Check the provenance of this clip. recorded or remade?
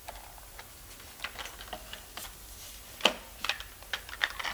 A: recorded